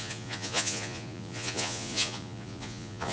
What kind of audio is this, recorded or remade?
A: remade